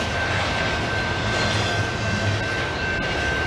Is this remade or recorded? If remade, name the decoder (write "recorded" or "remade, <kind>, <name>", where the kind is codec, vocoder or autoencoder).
recorded